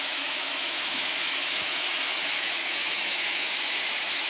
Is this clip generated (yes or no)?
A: yes